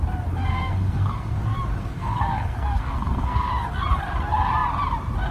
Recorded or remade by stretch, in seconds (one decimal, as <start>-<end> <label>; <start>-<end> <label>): 0.0-0.5 recorded; 0.5-1.4 remade; 1.4-1.8 recorded; 1.8-3.5 remade; 3.5-5.3 recorded